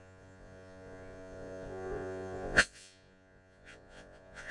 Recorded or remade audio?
remade